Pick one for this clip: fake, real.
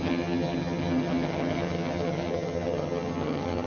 fake